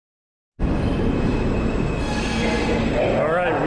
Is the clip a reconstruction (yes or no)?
no